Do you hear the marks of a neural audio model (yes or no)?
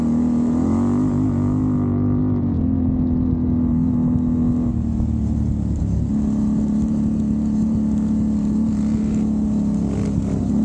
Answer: no